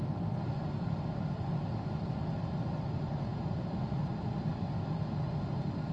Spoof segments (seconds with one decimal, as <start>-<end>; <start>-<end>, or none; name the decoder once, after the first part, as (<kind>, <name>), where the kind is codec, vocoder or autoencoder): none